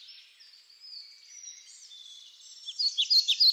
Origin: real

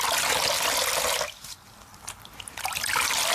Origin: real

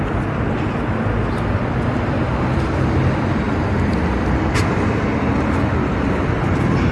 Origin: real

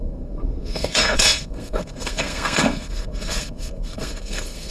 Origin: fake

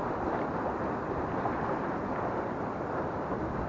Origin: real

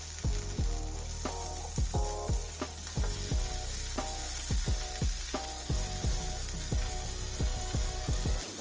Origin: real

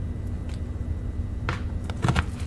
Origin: real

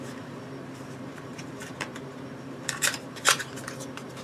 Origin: fake